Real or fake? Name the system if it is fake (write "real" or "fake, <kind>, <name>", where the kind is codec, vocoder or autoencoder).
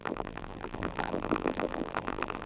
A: fake, vocoder, BigVGAN v2